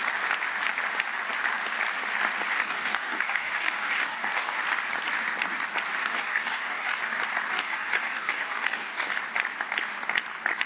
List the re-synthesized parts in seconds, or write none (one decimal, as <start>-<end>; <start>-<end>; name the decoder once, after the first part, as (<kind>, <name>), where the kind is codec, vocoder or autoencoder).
2.5-4.6 (codec, DAC); 6.0-7.0; 7.5-9.2